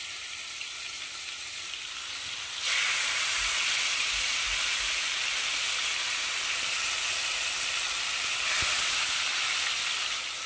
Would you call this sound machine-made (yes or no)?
no